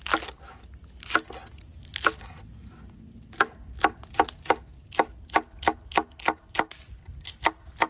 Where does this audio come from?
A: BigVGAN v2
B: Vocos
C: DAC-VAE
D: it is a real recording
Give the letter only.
D